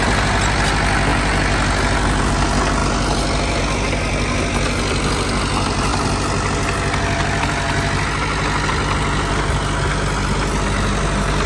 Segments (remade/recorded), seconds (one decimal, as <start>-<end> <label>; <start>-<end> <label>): 0.0-11.5 recorded